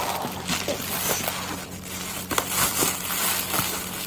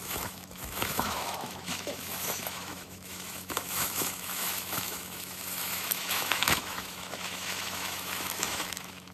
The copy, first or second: second